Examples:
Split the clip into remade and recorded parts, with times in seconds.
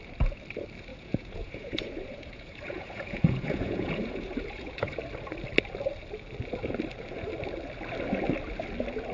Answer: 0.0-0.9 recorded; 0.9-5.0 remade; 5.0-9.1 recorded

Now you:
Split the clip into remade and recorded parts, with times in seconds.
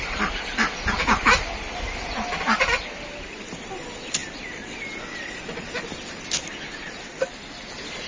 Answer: 0.0-8.1 recorded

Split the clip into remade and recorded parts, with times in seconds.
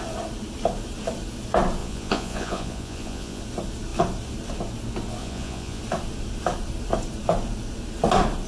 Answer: 0.0-1.8 recorded; 1.8-3.4 remade; 3.4-5.2 recorded; 5.2-5.8 remade; 5.8-8.5 recorded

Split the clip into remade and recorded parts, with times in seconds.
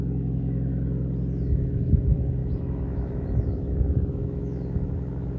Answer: 0.0-0.7 remade; 0.7-1.5 recorded; 1.5-5.4 remade